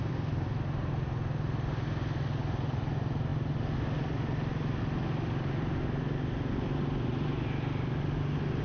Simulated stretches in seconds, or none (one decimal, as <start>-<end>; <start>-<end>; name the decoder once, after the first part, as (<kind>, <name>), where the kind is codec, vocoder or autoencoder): none